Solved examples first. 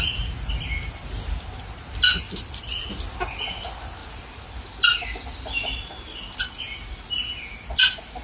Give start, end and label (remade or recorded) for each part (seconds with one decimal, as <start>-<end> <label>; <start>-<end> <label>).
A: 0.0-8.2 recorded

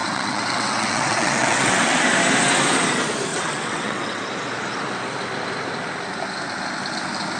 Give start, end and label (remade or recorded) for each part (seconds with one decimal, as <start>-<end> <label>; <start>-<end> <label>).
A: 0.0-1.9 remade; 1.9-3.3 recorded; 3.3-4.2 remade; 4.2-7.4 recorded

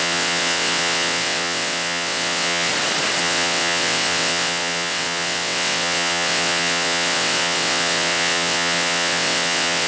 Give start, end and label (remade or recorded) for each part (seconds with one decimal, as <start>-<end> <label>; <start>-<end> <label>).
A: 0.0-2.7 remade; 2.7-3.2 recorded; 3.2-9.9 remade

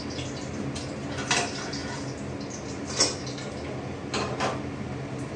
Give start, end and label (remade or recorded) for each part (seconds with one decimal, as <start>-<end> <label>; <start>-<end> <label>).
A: 0.0-5.4 recorded

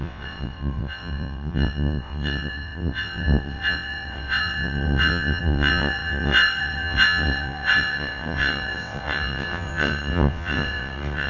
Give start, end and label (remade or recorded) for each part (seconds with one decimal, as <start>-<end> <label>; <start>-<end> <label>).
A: 0.0-11.3 remade

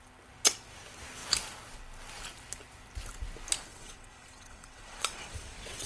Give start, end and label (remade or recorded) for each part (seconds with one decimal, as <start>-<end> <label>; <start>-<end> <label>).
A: 0.0-3.7 recorded; 3.7-5.9 remade

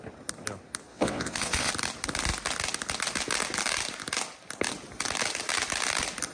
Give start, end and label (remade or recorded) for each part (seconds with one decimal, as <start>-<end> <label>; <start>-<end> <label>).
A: 0.0-0.9 recorded; 0.9-1.7 remade; 1.7-6.3 recorded

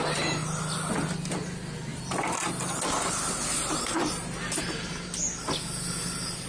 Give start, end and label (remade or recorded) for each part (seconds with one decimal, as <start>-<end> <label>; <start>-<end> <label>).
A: 0.0-6.5 recorded